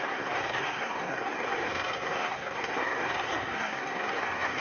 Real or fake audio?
fake